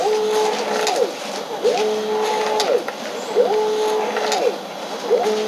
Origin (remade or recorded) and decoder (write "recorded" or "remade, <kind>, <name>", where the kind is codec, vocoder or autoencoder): recorded